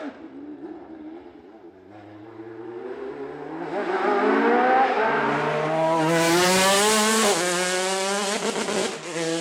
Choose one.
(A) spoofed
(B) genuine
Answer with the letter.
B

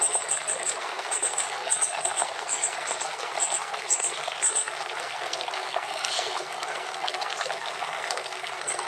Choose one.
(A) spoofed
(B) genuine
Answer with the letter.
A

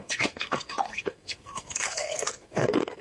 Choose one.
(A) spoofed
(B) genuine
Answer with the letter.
A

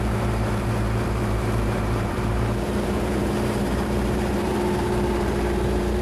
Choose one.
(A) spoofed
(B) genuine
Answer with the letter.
A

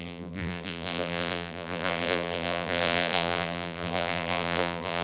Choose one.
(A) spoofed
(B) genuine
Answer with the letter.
A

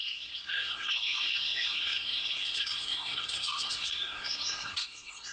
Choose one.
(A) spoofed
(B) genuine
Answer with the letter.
A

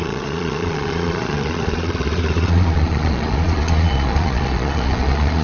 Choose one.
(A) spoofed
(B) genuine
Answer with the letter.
A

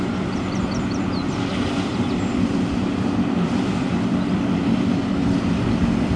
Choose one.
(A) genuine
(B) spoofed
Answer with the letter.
B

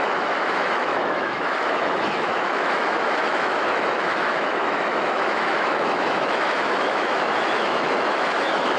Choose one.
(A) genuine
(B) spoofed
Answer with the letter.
B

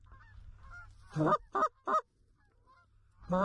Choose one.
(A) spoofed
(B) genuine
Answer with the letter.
B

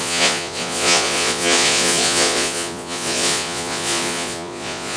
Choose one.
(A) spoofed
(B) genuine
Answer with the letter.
A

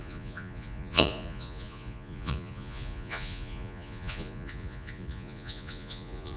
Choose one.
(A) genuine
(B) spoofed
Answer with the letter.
B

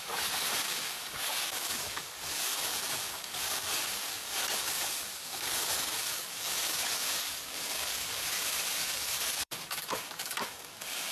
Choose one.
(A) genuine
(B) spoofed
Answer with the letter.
B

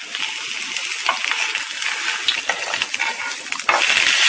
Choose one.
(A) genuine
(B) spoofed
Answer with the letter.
A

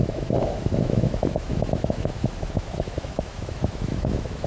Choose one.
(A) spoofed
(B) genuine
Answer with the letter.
A